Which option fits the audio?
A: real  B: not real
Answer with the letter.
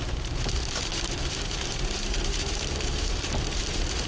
B